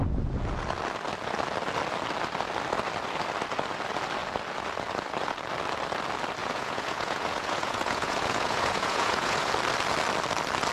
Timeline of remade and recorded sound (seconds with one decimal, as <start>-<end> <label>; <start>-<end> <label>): 0.0-6.4 recorded; 6.4-9.5 remade; 9.5-10.7 recorded